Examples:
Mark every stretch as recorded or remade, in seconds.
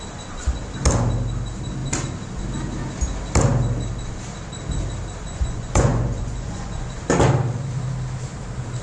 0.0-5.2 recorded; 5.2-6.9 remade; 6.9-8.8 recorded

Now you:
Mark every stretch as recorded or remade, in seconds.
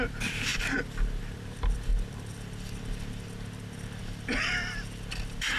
0.0-5.6 remade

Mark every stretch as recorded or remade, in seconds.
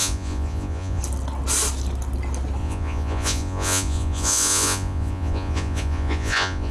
0.0-1.0 remade; 1.0-2.6 recorded; 2.6-6.7 remade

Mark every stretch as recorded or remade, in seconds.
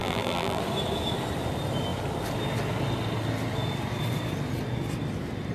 0.0-0.6 remade; 0.6-5.5 recorded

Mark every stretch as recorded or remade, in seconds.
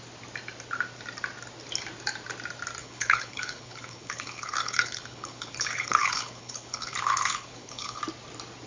0.0-2.8 recorded; 2.8-8.0 remade; 8.0-8.7 recorded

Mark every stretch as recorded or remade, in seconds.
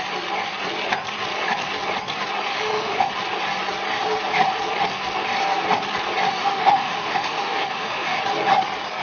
0.0-2.5 recorded; 2.5-3.1 remade; 3.1-6.4 recorded; 6.4-8.2 remade; 8.2-9.0 recorded